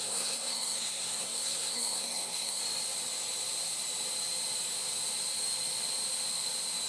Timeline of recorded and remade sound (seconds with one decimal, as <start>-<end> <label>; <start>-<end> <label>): 0.0-2.6 remade; 2.6-6.9 recorded